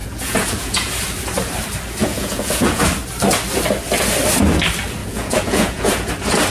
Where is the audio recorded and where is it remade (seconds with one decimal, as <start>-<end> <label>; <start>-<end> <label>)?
0.0-0.9 remade; 0.9-2.0 recorded; 2.0-2.8 remade; 2.8-5.0 recorded; 5.0-6.1 remade; 6.1-6.5 recorded

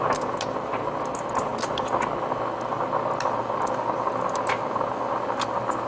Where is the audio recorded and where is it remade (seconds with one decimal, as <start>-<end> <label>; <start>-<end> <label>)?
0.0-5.9 recorded

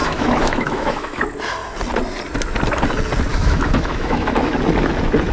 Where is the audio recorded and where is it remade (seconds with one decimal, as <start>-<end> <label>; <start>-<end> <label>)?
0.0-1.2 remade; 1.2-3.3 recorded; 3.3-4.5 remade; 4.5-5.3 recorded

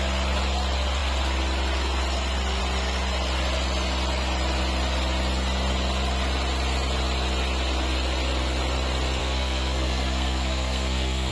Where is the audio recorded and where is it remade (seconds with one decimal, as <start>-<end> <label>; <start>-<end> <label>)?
0.0-9.2 recorded; 9.2-11.3 remade

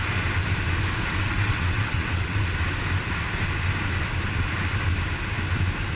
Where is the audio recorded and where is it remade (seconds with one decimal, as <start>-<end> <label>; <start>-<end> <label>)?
0.0-1.2 recorded; 1.2-2.4 remade; 2.4-5.9 recorded

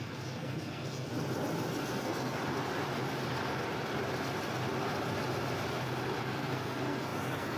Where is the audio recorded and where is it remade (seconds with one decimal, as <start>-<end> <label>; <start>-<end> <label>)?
0.0-1.1 remade; 1.1-1.7 recorded; 1.7-2.4 remade; 2.4-6.2 recorded; 6.2-7.6 remade